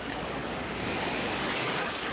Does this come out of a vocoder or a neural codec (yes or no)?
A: yes